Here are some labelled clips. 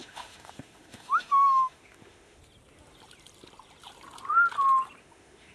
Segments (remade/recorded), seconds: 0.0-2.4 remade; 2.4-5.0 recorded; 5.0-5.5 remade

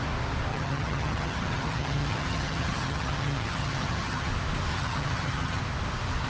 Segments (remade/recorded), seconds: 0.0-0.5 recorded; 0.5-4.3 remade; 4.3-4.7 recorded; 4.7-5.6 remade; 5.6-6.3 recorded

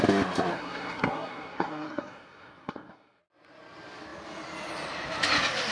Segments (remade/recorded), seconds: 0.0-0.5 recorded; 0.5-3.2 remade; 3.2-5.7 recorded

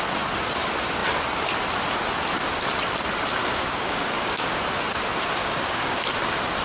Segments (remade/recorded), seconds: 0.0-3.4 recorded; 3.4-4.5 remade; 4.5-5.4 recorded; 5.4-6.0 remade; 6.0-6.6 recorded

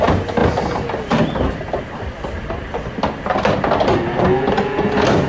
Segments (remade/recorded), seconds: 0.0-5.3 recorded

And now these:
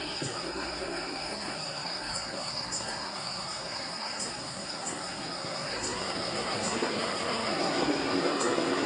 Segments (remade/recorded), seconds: 0.0-8.9 remade